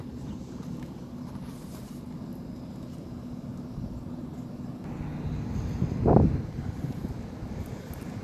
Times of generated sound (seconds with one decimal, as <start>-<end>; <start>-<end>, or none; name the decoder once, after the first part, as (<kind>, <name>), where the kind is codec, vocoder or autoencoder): none